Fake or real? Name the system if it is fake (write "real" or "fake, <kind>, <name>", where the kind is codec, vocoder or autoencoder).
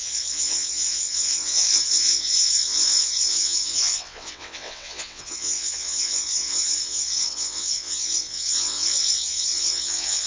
fake, vocoder, WaveNeXt